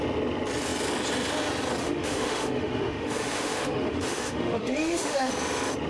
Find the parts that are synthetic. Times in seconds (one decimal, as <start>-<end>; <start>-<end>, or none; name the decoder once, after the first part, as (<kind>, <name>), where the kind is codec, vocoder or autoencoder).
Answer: 1.8-5.3 (autoencoder, DAC-VAE)